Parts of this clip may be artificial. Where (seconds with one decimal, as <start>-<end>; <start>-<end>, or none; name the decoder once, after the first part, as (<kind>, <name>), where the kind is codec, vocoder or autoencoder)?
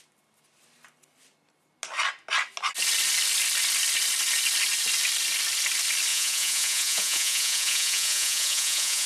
6.1-9.1 (vocoder, Vocos)